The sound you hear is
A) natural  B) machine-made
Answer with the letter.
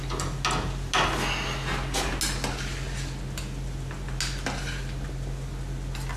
A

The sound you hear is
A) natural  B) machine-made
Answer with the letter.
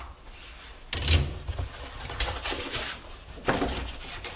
A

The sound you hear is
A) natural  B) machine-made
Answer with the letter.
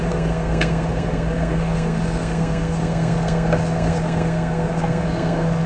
B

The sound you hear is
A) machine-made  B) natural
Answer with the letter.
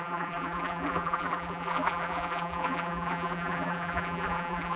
A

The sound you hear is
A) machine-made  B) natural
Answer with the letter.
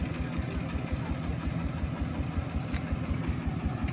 B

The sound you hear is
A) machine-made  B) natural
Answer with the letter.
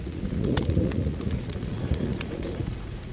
A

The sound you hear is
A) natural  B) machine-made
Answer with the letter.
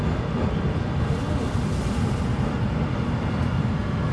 A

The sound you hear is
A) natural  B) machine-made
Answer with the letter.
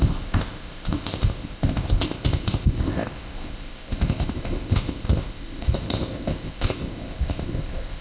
B